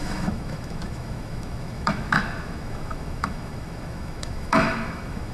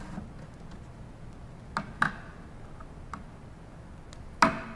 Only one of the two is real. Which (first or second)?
second